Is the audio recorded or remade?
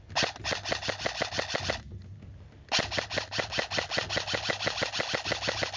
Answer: recorded